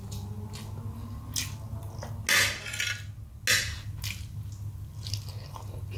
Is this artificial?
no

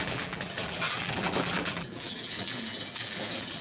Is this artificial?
yes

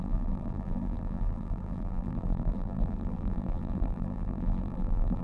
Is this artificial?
yes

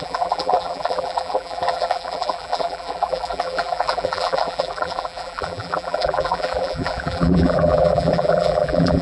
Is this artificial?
yes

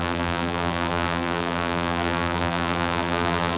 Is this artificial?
yes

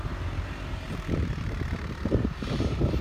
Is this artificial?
yes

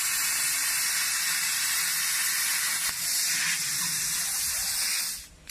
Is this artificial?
no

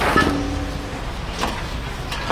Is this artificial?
no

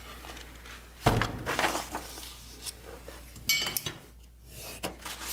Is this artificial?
no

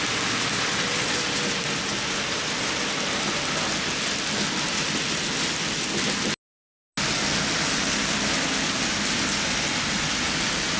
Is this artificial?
no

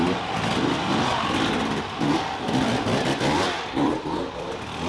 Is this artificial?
yes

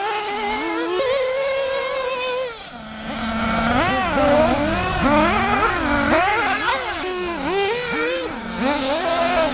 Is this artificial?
no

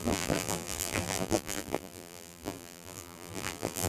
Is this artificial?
yes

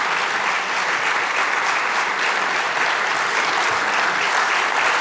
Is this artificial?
no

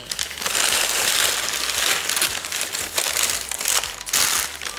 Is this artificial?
no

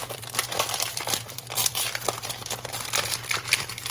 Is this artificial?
yes